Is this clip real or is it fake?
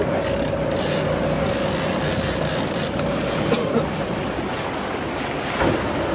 real